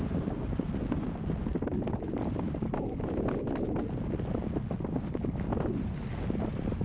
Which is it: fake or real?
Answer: real